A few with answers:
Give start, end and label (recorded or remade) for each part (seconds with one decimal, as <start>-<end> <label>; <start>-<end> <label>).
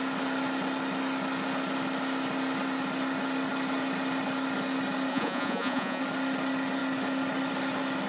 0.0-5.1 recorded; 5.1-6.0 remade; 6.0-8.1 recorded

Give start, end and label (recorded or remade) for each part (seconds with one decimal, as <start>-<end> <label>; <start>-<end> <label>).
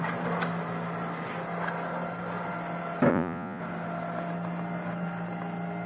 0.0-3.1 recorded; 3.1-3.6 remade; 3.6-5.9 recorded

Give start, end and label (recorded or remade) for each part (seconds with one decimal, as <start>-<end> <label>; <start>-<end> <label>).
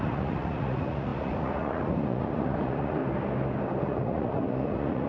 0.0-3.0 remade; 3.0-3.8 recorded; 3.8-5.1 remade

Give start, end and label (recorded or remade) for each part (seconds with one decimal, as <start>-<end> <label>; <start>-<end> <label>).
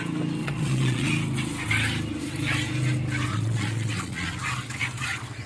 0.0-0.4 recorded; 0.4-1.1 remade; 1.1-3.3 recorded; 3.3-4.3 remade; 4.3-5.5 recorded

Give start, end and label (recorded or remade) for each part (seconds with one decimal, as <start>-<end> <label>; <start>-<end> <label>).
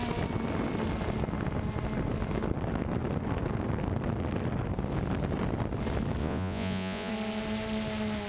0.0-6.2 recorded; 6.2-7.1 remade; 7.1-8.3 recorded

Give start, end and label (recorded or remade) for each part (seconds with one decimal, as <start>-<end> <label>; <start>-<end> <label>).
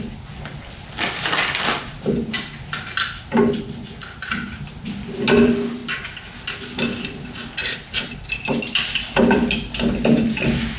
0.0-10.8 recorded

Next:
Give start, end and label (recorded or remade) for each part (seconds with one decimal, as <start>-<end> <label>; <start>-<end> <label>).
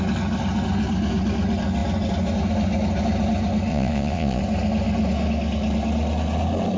0.0-3.7 recorded; 3.7-4.4 remade; 4.4-6.8 recorded